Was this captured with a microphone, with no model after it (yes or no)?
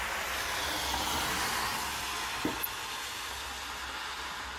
yes